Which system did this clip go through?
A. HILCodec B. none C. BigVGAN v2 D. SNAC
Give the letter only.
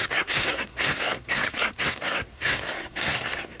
D